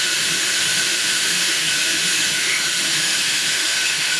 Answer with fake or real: fake